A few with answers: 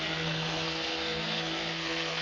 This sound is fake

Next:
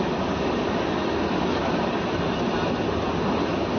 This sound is real